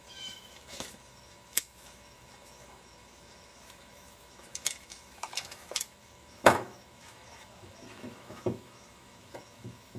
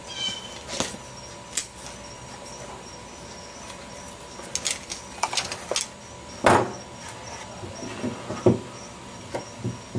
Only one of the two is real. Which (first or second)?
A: second